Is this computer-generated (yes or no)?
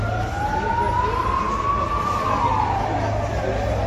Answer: no